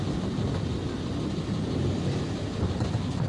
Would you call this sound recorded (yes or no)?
yes